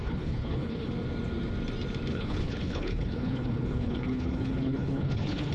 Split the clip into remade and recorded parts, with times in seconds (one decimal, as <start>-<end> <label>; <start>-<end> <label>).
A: 0.0-0.9 remade; 0.9-2.1 recorded; 2.1-5.5 remade